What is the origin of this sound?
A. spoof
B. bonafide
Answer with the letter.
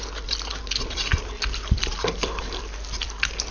B